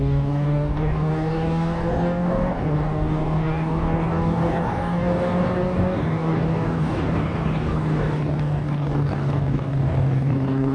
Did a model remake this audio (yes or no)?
yes